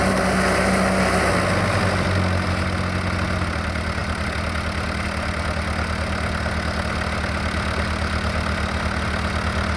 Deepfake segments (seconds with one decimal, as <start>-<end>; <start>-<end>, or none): none